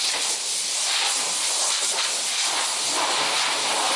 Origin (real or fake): real